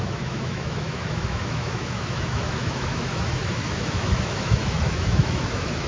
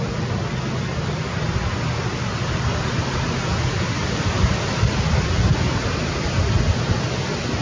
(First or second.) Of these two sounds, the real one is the second